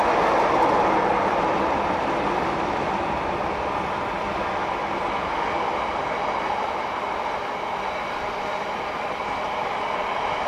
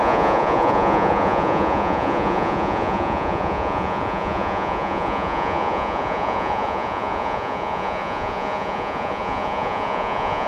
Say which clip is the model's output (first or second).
second